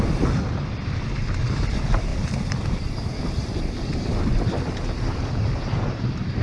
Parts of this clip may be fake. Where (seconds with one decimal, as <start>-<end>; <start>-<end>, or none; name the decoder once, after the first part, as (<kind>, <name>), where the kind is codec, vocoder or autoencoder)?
2.1-3.4 (vocoder, BigVGAN v2)